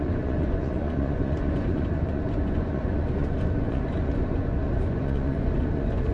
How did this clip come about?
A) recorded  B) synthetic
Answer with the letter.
B